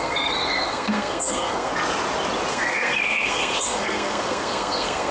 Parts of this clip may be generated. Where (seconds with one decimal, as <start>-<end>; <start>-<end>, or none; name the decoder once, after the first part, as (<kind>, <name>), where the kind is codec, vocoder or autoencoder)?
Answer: 0.0-1.7 (codec, SNAC); 2.5-5.1